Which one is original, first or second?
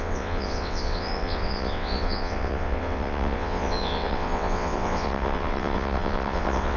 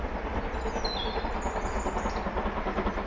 second